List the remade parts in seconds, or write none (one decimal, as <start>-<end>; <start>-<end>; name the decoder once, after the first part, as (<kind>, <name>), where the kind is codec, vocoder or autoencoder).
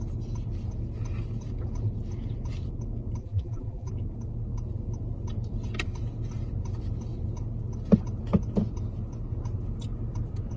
3.2-3.9 (vocoder, BigVGAN v2)